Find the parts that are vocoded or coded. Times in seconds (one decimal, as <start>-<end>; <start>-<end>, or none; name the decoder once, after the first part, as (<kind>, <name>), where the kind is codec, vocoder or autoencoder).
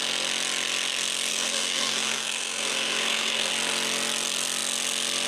1.3-3.5 (codec, SNAC)